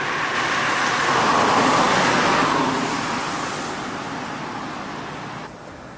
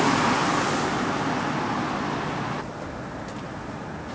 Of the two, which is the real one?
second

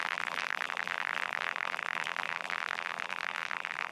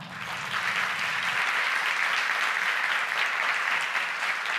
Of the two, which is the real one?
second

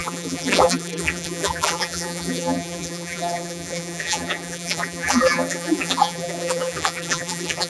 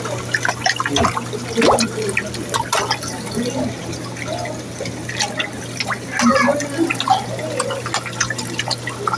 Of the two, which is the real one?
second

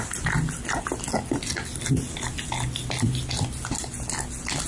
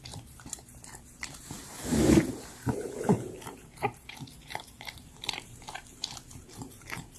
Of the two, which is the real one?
first